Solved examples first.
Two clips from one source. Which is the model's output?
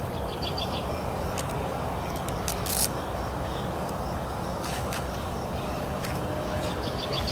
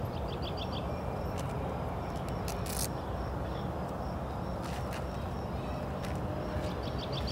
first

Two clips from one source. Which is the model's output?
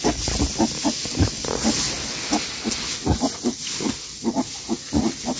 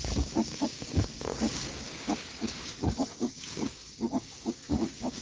second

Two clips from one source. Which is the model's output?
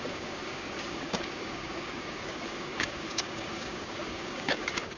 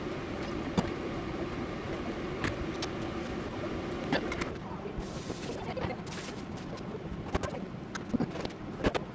first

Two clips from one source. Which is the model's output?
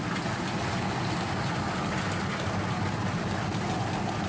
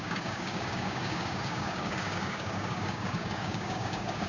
second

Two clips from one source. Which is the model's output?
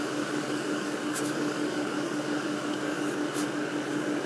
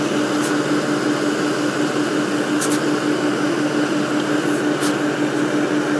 first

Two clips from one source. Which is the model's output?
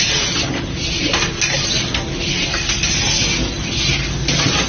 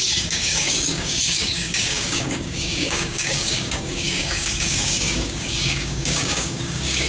second